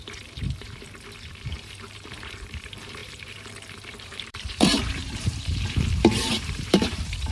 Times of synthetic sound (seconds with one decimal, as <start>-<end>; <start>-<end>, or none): 1.3-7.3